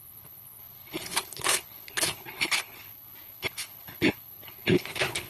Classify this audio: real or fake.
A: fake